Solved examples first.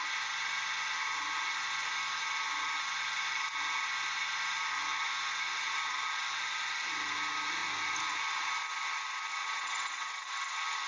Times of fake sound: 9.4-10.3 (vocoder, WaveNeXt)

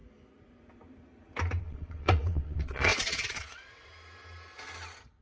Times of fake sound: 1.6-3.9 (vocoder, WaveNeXt)

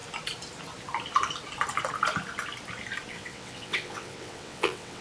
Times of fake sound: 3.1-5.0 (vocoder, WaveNeXt)

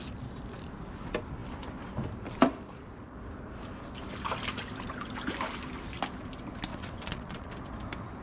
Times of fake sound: 6.7-7.5 (vocoder, WaveNeXt)

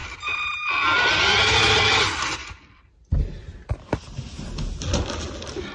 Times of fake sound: none